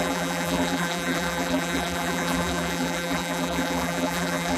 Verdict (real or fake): fake